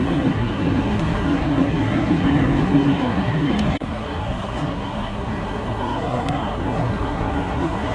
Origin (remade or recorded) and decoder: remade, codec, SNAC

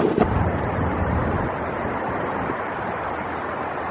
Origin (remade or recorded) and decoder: remade, vocoder, BigVGAN v2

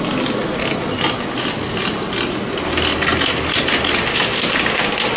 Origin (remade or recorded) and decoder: recorded